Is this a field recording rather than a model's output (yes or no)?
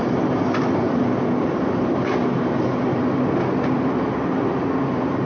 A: yes